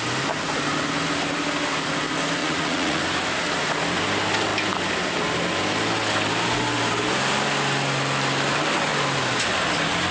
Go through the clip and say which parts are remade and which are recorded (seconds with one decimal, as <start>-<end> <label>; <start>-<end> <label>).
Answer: 0.0-2.4 recorded; 2.4-3.0 remade; 3.0-10.1 recorded